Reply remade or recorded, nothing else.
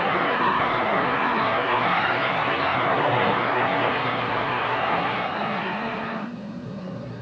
remade